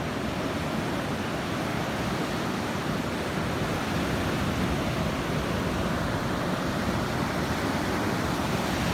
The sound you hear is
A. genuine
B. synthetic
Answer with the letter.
A